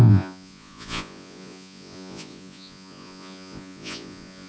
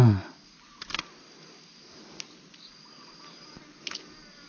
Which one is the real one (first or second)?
second